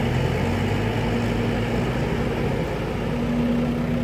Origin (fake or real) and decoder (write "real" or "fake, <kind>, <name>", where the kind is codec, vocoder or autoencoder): real